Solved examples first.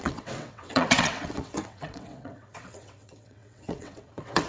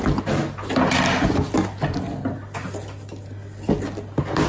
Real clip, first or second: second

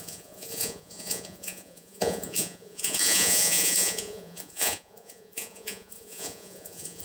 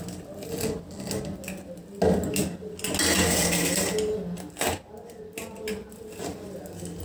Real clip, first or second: second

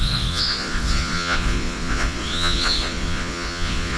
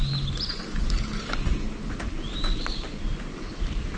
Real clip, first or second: second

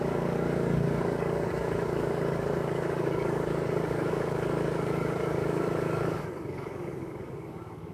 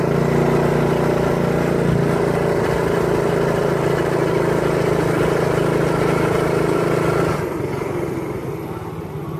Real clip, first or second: second